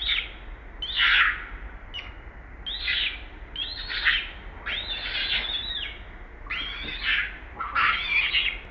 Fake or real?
real